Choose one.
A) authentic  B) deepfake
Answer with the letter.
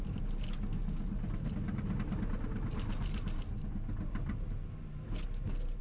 A